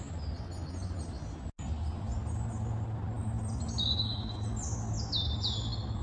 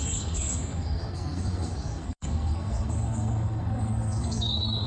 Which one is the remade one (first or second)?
second